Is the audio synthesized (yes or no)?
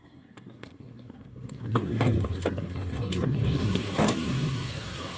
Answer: yes